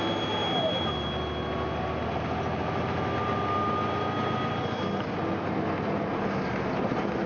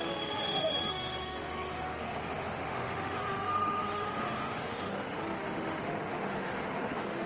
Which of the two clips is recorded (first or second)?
first